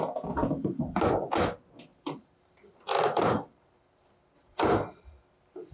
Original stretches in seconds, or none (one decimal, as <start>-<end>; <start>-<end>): 0.0-1.9; 5.0-5.7